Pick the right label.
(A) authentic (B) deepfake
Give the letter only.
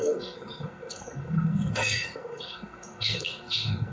B